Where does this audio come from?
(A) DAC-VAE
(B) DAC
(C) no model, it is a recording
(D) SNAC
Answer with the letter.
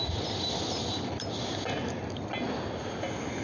C